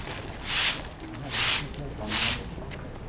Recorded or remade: recorded